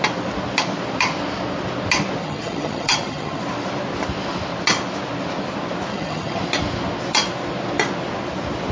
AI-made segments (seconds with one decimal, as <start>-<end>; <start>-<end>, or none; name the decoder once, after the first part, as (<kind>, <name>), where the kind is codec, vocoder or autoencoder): 2.2-3.4 (vocoder, HiFi-GAN); 5.9-6.4